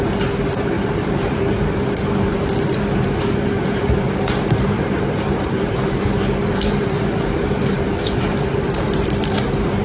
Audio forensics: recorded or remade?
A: remade